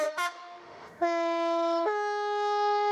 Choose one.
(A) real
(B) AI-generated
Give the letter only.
B